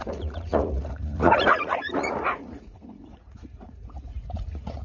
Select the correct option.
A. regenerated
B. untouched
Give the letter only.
A